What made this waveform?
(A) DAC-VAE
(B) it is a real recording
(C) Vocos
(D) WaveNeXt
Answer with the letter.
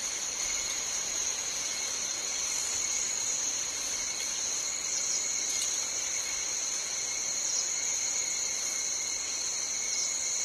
B